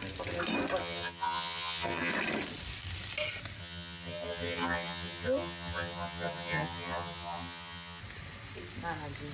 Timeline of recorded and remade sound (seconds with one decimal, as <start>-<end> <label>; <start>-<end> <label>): 0.0-0.8 recorded; 0.8-2.1 remade; 2.1-3.6 recorded; 3.6-8.0 remade; 8.0-9.3 recorded